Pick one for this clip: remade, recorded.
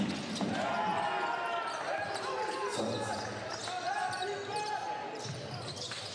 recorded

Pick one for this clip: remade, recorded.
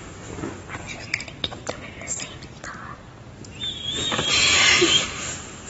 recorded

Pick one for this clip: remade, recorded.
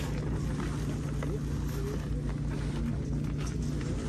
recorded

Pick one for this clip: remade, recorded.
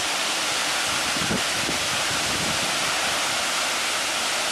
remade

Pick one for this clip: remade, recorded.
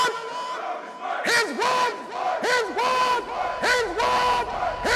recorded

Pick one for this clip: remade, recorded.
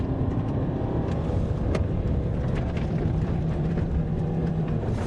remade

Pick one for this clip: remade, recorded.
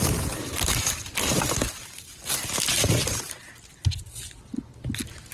recorded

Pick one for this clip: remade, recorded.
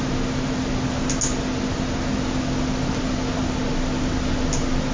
recorded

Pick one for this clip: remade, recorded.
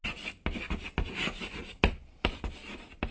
recorded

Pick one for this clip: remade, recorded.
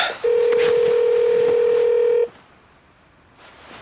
recorded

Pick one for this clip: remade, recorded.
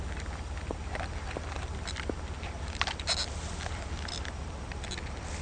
recorded